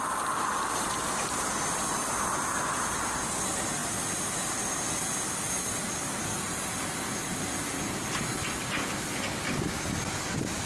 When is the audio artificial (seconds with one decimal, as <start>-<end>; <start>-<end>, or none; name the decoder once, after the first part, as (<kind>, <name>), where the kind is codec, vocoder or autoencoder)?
none